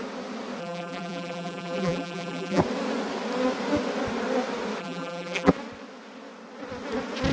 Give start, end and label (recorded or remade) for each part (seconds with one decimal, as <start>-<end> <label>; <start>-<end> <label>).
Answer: 0.0-0.6 recorded; 0.6-2.6 remade; 2.6-4.8 recorded; 4.8-5.5 remade; 5.5-7.3 recorded